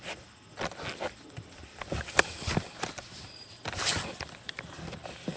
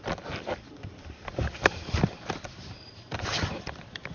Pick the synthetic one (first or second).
second